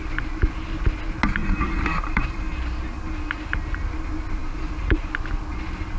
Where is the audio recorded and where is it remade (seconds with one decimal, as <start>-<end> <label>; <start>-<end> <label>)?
0.0-1.4 recorded; 1.4-2.6 remade; 2.6-4.4 recorded; 4.4-5.1 remade; 5.1-6.0 recorded